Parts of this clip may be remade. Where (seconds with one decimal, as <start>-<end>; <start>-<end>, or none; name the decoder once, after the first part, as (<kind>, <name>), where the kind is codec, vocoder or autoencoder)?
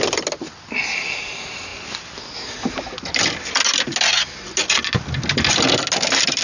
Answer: none